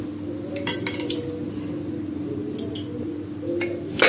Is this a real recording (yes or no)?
yes